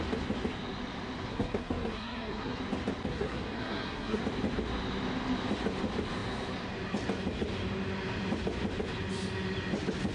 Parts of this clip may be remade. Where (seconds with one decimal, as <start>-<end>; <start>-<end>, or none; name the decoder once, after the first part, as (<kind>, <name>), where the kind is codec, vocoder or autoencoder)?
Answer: 1.3-2.6 (codec, SNAC); 3.1-4.2